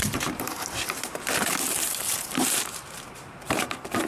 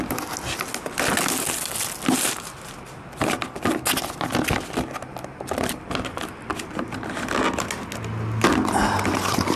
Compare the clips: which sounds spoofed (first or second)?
first